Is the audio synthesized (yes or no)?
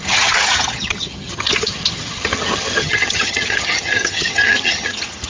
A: yes